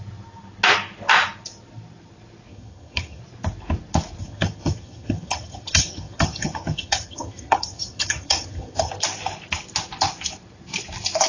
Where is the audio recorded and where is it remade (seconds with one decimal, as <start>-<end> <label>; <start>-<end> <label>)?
0.0-2.5 recorded; 2.5-3.2 remade; 3.2-4.2 recorded; 4.2-8.9 remade; 8.9-11.3 recorded